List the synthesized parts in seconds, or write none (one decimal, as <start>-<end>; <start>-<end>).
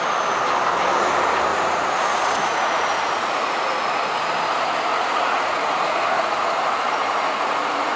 1.5-4.2; 4.9-8.0